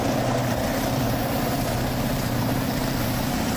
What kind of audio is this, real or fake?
fake